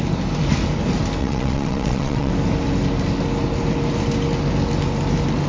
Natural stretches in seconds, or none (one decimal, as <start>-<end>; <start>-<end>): 0.0-1.2; 2.3-5.5